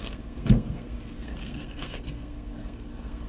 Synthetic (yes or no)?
yes